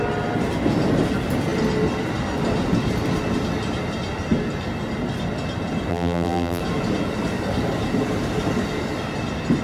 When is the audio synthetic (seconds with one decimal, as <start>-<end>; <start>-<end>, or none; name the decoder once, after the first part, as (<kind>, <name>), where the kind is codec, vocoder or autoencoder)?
5.9-6.6 (vocoder, BigVGAN v2)